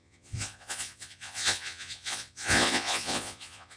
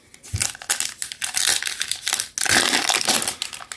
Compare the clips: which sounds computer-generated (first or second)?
first